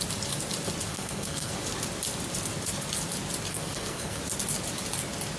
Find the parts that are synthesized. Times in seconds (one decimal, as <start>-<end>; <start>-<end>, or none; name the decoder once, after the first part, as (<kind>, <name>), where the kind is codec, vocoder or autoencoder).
0.9-1.6 (codec, SNAC); 3.5-4.2